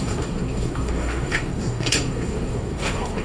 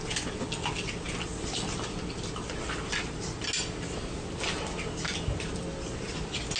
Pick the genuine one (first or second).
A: second